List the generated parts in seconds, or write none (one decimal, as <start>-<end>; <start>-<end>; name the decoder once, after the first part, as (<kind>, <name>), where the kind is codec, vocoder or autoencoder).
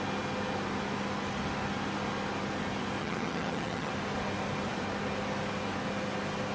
3.0-3.9 (vocoder, HiFi-GAN)